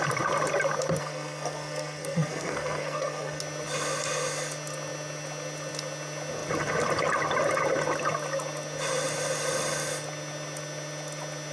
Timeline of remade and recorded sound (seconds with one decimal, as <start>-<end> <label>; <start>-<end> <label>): 0.0-1.0 recorded; 1.0-3.4 remade; 3.4-11.5 recorded